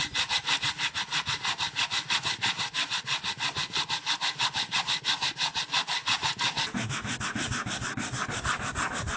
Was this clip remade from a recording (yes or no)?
no